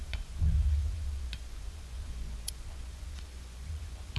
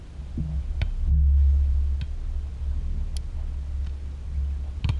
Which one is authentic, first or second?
second